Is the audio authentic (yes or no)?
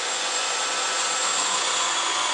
no